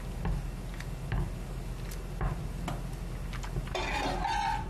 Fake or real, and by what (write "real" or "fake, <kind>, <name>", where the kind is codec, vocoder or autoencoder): real